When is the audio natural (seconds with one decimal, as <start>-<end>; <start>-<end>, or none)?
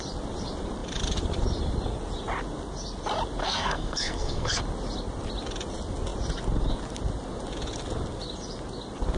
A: 0.0-3.4; 4.6-9.2